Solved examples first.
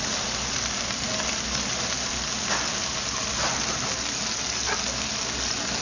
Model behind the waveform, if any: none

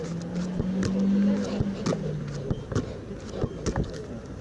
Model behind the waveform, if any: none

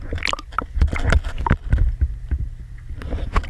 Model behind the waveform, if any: none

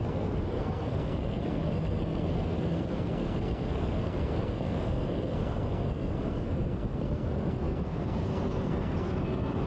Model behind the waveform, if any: codec, SNAC